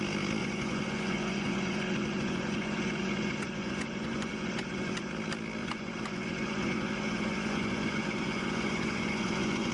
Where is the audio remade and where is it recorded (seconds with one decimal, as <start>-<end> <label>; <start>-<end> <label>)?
0.0-0.4 recorded; 0.4-5.1 remade; 5.1-5.6 recorded; 5.6-9.7 remade

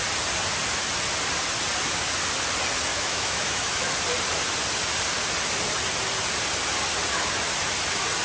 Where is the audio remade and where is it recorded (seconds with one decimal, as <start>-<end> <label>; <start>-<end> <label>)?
0.0-2.9 recorded; 2.9-3.9 remade; 3.9-8.2 recorded

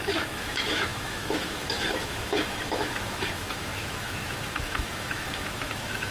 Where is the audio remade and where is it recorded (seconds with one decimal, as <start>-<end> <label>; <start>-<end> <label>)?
0.0-6.1 remade